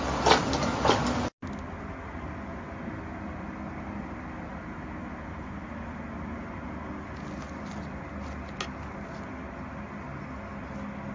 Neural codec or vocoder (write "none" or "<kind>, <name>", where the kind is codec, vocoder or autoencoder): none